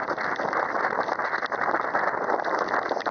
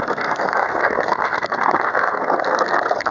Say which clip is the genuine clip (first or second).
first